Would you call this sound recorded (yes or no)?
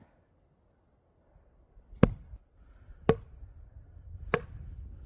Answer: yes